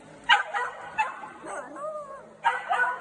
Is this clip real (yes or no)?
yes